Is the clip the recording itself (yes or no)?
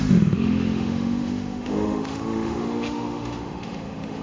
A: no